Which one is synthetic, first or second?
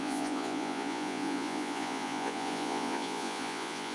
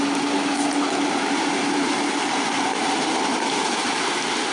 first